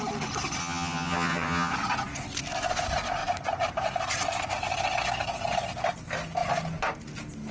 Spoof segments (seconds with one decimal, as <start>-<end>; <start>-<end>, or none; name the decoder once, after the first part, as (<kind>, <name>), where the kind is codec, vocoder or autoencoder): 0.6-1.7 (vocoder, HiFi-GAN)